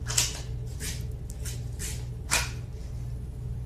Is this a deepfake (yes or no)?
no